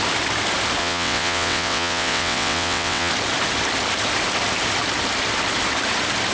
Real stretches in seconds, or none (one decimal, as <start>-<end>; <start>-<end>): 0.0-0.8; 3.1-6.3